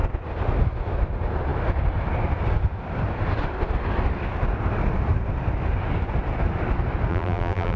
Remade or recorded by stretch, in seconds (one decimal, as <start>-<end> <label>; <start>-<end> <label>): 0.0-7.1 recorded; 7.1-7.8 remade

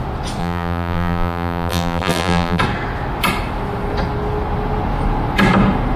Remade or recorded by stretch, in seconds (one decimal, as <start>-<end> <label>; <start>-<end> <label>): 0.0-0.4 recorded; 0.4-2.6 remade; 2.6-6.0 recorded